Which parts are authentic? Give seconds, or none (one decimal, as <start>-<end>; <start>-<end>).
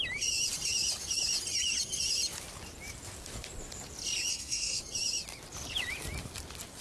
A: 0.0-4.3; 4.8-6.8